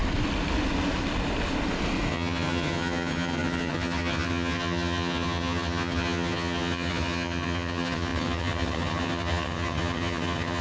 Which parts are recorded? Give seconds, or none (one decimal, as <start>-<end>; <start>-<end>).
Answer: 0.0-2.1